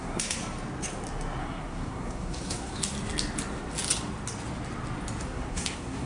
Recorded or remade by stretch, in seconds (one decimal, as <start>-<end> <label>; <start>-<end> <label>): 0.0-0.4 remade; 0.4-1.4 recorded; 1.4-2.8 remade; 2.8-5.2 recorded; 5.2-6.1 remade